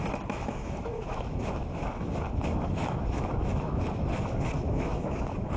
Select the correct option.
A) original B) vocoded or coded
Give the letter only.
B